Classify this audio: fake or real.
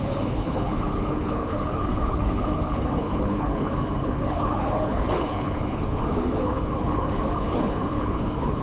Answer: fake